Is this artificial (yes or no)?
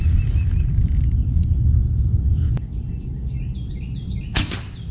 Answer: no